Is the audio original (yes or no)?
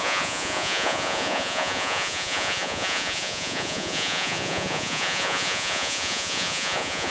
no